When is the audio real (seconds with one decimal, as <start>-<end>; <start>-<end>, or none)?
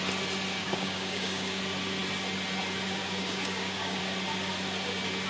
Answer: 0.0-0.6; 1.6-3.0; 4.0-5.3